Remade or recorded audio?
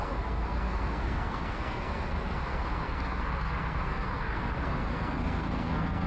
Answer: remade